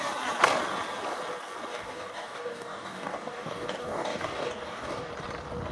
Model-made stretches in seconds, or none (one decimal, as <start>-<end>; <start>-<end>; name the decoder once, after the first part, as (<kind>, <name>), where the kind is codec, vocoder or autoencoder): 1.7-5.1 (codec, DAC)